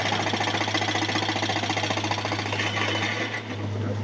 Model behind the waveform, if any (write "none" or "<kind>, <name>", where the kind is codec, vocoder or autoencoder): none